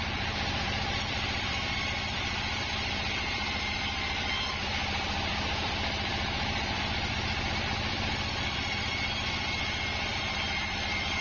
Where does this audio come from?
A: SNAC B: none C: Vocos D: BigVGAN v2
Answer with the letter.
D